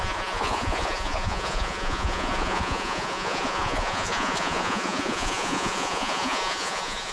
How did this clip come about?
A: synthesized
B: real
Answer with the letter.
A